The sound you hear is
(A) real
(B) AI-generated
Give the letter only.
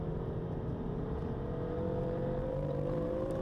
B